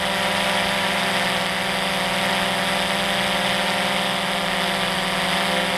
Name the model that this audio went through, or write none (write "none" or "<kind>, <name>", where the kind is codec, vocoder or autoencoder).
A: none